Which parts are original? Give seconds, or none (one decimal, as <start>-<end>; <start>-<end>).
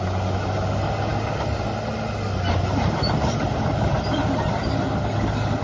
0.0-5.6